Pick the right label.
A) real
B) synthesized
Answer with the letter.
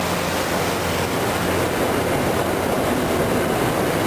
A